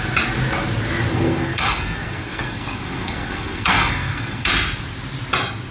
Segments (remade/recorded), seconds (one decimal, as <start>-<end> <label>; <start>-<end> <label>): 0.0-1.1 recorded; 1.1-4.5 remade; 4.5-5.7 recorded

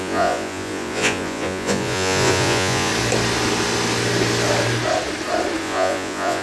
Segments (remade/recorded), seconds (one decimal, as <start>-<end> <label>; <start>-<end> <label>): 0.0-2.9 remade; 2.9-5.6 recorded; 5.6-6.4 remade

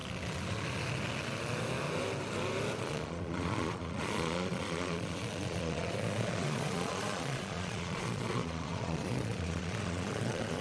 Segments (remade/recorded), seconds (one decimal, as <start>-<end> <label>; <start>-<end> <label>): 0.0-2.8 recorded; 2.8-10.6 remade

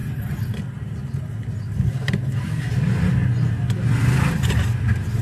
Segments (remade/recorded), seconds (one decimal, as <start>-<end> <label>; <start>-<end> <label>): 0.0-5.2 recorded